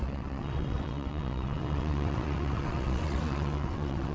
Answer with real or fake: fake